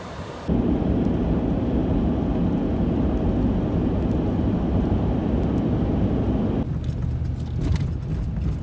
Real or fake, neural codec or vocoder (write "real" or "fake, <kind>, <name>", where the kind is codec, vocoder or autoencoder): real